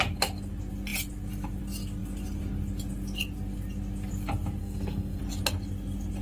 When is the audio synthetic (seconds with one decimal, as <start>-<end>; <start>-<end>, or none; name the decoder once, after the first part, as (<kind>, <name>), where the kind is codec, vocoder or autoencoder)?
4.6-5.2 (codec, SNAC)